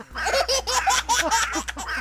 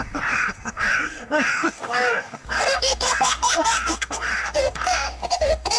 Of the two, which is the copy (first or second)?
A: second